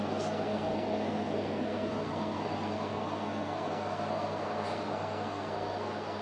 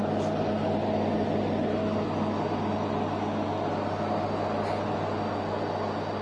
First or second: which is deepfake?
first